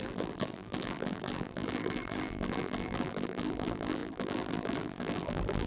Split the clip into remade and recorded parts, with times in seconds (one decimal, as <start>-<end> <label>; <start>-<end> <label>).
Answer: 0.0-5.7 remade